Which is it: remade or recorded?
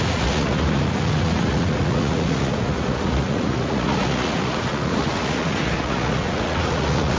remade